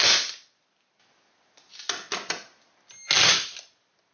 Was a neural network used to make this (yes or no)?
no